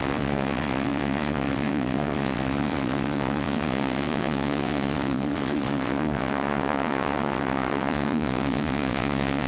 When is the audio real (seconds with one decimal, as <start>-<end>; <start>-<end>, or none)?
none